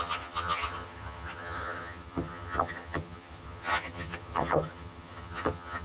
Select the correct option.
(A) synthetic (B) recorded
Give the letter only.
A